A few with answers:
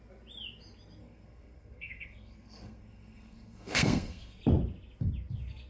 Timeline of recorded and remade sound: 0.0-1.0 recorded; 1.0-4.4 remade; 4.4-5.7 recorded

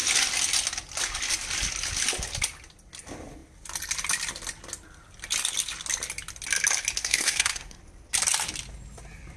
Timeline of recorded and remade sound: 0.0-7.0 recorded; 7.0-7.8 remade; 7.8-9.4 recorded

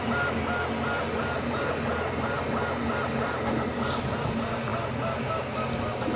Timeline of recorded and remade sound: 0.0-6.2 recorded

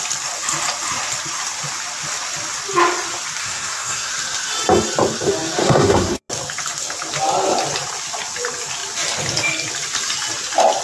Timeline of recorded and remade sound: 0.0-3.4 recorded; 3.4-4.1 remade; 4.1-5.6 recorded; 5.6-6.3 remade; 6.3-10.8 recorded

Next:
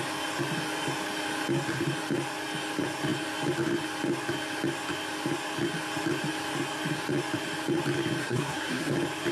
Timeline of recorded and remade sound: 0.0-8.2 recorded; 8.2-8.9 remade; 8.9-9.3 recorded

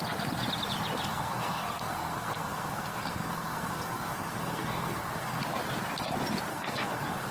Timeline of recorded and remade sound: 0.0-1.1 recorded; 1.1-5.4 remade; 5.4-6.5 recorded; 6.5-7.3 remade